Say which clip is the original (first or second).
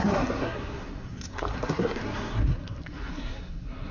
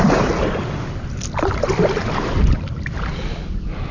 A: second